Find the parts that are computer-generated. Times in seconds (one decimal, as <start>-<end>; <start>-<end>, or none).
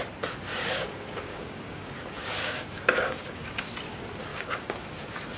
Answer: 0.5-3.7; 4.3-5.0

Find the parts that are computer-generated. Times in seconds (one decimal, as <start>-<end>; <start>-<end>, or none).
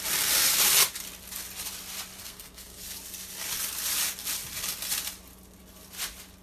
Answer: 2.2-2.8